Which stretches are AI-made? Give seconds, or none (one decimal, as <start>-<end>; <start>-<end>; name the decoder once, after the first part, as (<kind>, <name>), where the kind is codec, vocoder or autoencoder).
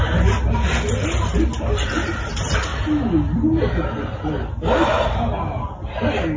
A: none